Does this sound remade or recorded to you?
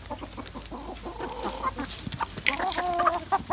recorded